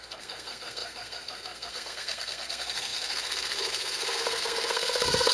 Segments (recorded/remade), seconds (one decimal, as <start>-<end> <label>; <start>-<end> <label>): 0.0-5.3 remade